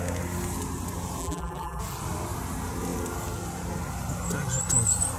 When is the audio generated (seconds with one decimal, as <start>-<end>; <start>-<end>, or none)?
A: 1.2-1.8